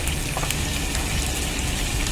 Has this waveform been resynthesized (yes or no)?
yes